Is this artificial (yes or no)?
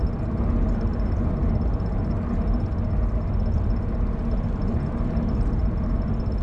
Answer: no